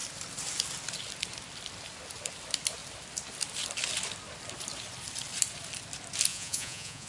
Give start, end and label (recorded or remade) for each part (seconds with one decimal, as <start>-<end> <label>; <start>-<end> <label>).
0.0-6.3 recorded; 6.3-7.1 remade